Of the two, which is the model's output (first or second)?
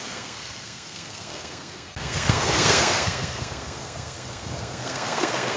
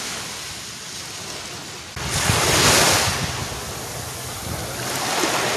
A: first